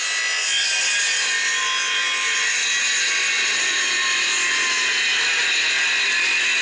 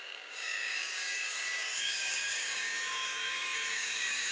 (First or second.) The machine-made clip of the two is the second